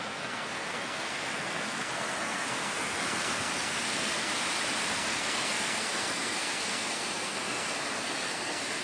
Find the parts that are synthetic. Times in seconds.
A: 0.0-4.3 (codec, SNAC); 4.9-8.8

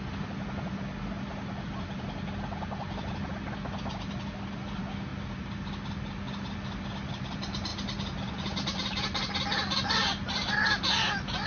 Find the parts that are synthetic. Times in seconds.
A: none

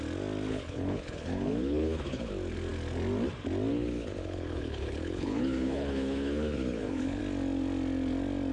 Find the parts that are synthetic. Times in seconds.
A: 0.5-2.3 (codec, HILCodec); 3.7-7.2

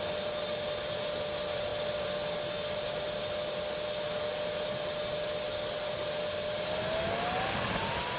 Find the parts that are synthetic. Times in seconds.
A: none

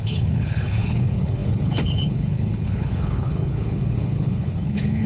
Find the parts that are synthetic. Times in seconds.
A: 0.0-5.1 (codec, HILCodec)

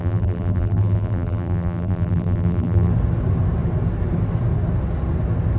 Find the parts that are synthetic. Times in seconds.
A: 0.0-2.9 (vocoder, BigVGAN v2)

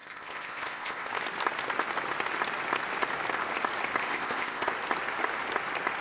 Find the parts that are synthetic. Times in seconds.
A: 0.0-1.1 (codec, ZipCodec); 4.0-4.7